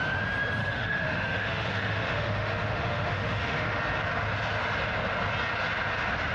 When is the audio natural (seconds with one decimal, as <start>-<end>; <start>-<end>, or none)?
0.0-0.6; 3.8-6.3